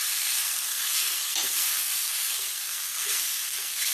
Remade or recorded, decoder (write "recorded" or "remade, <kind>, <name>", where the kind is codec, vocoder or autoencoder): remade, codec, SNAC